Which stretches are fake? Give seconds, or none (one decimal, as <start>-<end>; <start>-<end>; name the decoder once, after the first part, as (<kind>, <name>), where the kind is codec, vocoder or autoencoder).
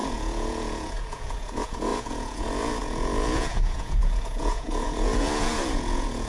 0.0-6.3 (vocoder, Vocos)